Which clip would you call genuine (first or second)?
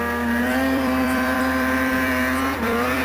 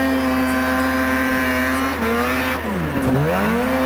second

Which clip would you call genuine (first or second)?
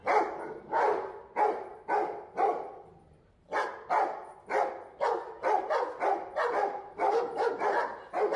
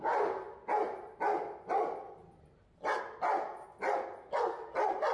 second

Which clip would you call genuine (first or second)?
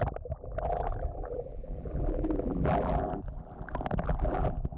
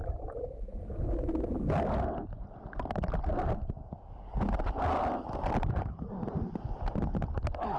second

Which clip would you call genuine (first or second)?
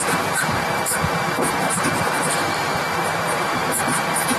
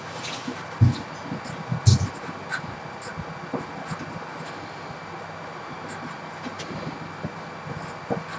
second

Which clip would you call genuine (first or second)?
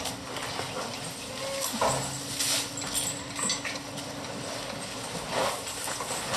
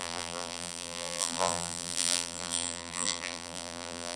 first